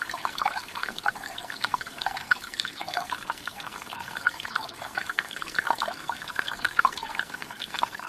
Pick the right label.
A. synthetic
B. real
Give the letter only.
A